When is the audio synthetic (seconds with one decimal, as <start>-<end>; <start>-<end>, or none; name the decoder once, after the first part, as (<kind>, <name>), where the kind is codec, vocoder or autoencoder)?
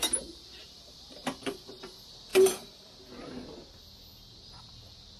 0.6-1.9 (vocoder, BigVGAN v2); 2.3-3.0